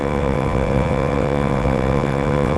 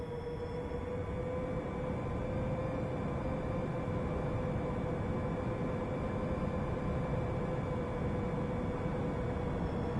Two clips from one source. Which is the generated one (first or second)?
first